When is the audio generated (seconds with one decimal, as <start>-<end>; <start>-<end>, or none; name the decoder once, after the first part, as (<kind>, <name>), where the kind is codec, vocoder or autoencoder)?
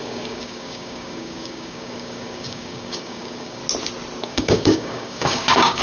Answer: 0.0-3.6 (codec, DAC); 4.2-5.8